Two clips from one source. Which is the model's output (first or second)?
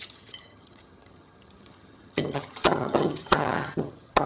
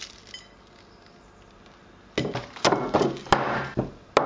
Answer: first